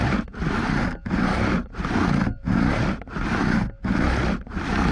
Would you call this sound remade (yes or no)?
no